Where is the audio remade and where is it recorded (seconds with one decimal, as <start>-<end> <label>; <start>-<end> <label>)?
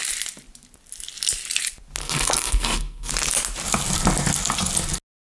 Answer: 0.0-2.0 recorded; 2.0-3.1 remade; 3.1-5.3 recorded